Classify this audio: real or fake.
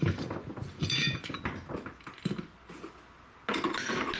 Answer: real